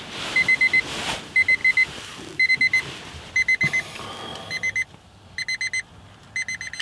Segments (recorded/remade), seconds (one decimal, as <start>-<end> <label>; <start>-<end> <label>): 0.0-6.8 recorded